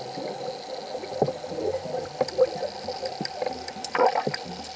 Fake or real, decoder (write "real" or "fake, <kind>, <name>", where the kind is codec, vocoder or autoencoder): real